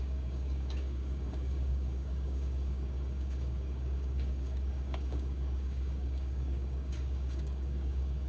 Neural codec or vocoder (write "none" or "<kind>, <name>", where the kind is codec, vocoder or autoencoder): codec, DAC